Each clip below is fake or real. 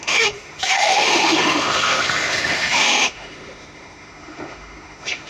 fake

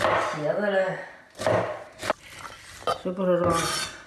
real